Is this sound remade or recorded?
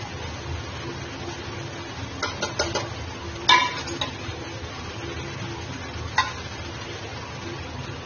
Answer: recorded